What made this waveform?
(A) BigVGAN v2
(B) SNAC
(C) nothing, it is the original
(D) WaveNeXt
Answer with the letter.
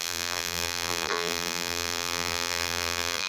A